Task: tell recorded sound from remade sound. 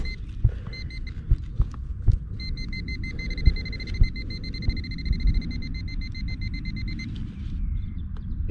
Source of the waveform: recorded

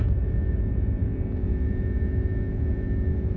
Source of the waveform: remade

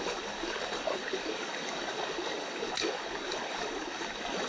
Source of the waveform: remade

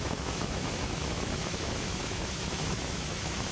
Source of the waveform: remade